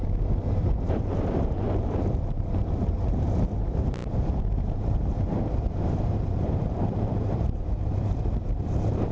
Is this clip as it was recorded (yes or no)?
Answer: no